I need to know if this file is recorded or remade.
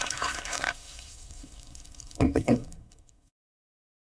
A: remade